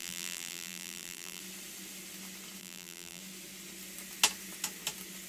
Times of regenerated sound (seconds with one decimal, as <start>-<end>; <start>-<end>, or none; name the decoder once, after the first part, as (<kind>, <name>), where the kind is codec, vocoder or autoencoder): 0.0-1.4 (vocoder, BigVGAN v2); 2.6-3.2